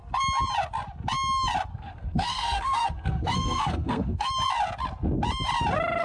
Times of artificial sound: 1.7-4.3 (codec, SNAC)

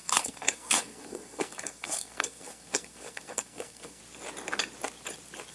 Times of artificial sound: 0.0-4.0 (codec, SNAC)

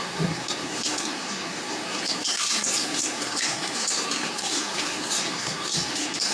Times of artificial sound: 0.0-6.3 (codec, SNAC)

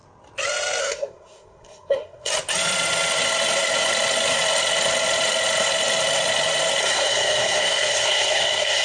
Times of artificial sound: 0.8-2.3 (codec, SNAC); 6.8-8.8